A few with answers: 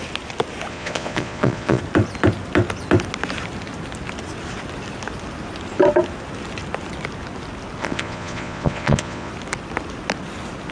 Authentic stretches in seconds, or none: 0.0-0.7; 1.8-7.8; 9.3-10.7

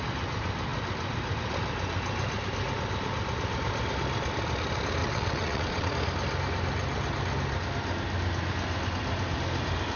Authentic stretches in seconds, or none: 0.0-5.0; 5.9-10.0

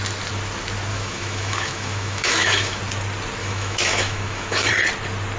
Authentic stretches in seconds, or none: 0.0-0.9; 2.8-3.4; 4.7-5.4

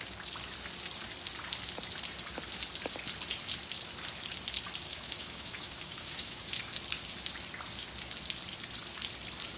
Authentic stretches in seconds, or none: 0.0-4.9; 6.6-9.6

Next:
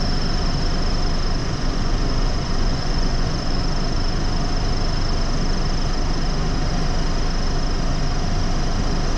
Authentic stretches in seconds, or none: 0.0-1.4; 3.6-9.2

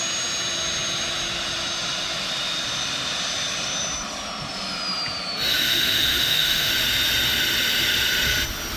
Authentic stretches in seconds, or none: 0.0-5.5; 6.7-8.8